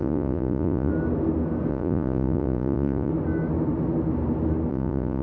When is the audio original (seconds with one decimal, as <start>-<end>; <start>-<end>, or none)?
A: 0.9-1.7; 3.1-4.7